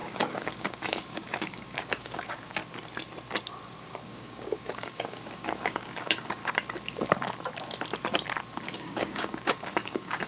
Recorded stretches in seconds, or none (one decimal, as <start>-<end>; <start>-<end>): 2.6-3.8; 6.4-8.6